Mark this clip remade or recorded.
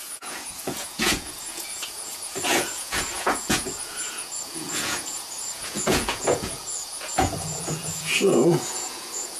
remade